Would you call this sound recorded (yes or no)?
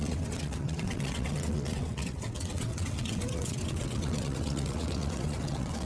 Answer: no